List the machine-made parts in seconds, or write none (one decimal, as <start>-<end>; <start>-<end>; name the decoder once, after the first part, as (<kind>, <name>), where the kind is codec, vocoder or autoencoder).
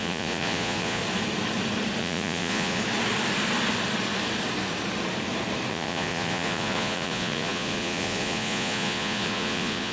0.0-1.0 (vocoder, Vocos); 2.0-2.8; 5.7-9.9